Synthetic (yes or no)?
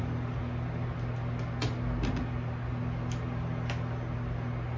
no